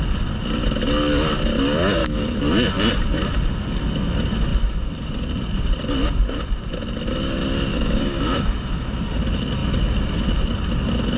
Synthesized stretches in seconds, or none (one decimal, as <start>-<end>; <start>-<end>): 2.0-2.7; 7.7-9.0